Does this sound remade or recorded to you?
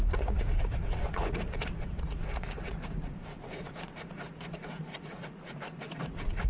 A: remade